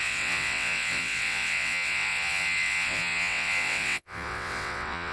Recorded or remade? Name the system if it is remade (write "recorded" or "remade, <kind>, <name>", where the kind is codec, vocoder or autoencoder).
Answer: remade, vocoder, WaveNeXt